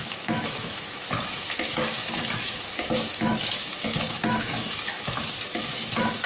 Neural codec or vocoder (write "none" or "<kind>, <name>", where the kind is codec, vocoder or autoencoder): autoencoder, DAC-VAE